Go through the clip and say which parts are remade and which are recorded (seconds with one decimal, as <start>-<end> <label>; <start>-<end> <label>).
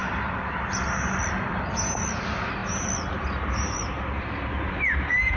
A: 0.0-1.6 remade; 1.6-5.4 recorded